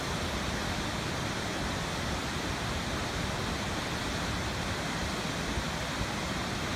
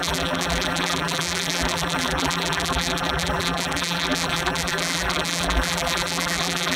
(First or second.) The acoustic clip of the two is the first